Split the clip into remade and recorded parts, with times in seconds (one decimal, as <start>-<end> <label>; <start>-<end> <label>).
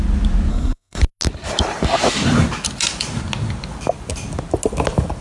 0.0-0.5 recorded; 0.5-1.0 remade; 1.0-5.2 recorded